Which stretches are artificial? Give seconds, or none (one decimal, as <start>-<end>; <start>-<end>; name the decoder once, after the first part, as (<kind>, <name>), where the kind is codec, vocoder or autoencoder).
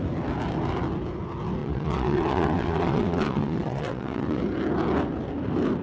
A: 1.6-4.4 (vocoder, WaveNeXt)